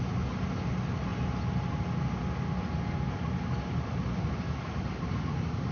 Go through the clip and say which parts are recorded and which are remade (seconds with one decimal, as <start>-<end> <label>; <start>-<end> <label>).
0.0-5.7 recorded